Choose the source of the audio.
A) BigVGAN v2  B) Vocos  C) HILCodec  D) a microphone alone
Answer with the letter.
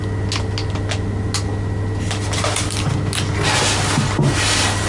D